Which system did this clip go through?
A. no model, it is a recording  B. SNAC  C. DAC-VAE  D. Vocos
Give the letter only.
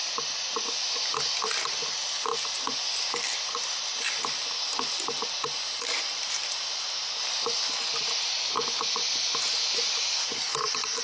A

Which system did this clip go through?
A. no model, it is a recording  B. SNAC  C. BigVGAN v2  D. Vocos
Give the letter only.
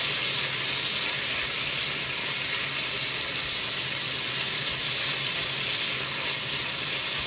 A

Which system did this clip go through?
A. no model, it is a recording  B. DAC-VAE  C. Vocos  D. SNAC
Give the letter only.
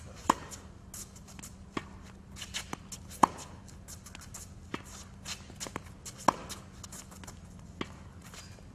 A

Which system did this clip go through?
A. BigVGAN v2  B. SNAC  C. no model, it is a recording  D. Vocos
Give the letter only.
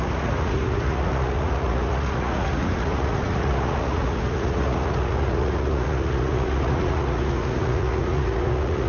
D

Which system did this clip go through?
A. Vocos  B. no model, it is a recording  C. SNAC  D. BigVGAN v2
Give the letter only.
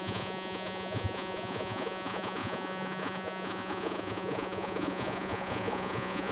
A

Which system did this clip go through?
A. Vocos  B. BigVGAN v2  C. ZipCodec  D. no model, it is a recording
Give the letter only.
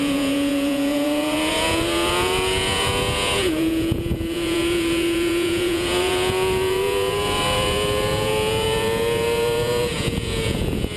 A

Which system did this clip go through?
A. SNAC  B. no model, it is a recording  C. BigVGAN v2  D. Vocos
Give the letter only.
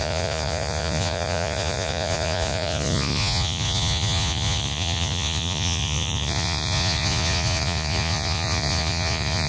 D